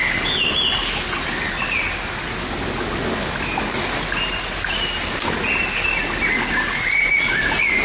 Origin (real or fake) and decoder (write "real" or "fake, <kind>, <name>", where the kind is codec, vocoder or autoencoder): real